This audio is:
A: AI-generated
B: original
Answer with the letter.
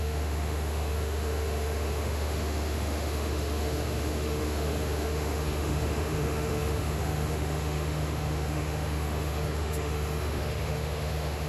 A